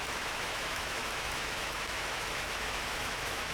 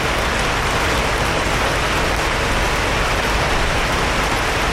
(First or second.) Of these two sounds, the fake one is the first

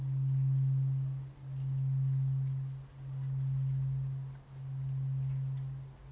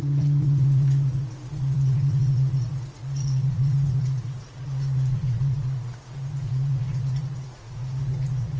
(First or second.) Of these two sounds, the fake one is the second